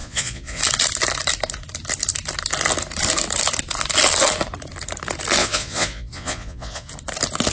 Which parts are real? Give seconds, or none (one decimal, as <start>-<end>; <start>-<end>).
0.6-5.4; 6.9-7.5